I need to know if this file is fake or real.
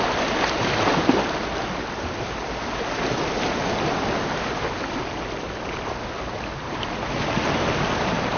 real